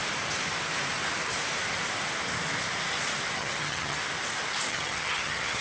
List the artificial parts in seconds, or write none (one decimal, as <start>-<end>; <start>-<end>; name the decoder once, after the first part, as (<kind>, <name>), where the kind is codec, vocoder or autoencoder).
3.4-4.0 (vocoder, HiFi-GAN); 4.7-5.6